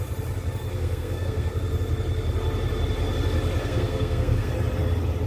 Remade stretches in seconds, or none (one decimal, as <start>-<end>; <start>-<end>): 0.7-1.5; 3.6-4.5

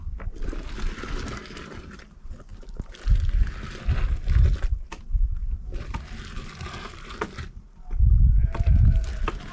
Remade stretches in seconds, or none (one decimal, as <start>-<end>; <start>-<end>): 5.6-7.5

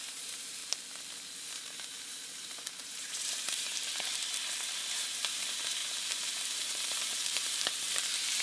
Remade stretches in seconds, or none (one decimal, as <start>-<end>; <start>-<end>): 0.0-0.6; 1.5-3.7; 4.9-8.4

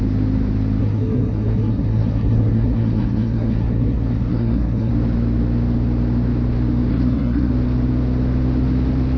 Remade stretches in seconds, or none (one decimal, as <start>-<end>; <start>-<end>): 0.8-4.9; 6.9-7.5

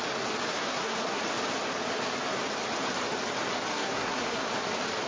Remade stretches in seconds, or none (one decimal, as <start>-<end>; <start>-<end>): 0.5-1.2; 3.7-4.5

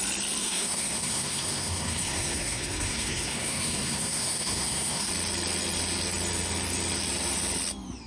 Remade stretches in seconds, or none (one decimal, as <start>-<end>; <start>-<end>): 0.4-5.1

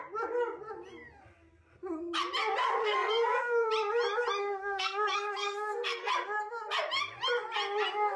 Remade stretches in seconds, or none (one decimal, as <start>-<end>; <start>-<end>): 2.8-3.7; 4.4-6.1

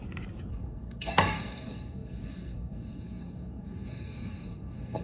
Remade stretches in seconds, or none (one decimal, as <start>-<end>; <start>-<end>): 0.5-5.0